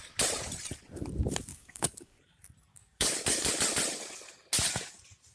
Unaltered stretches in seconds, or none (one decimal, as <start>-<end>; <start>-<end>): 0.0-1.5; 2.2-2.7; 3.5-5.3